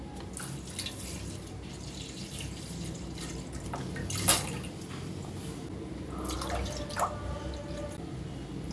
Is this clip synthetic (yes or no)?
no